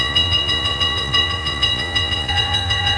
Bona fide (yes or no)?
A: no